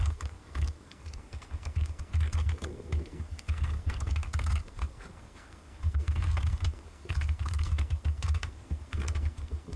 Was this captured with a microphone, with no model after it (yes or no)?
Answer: no